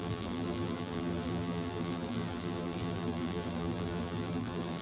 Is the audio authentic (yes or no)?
no